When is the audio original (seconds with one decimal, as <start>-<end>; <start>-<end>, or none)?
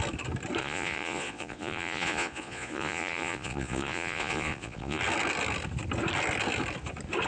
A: 0.0-0.6; 5.0-7.3